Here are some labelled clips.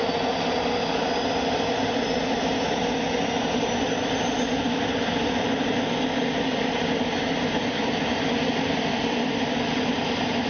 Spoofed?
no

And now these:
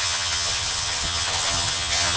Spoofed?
yes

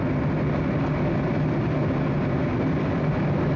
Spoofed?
no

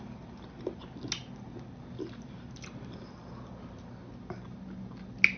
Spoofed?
no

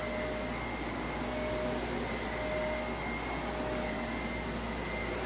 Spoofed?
no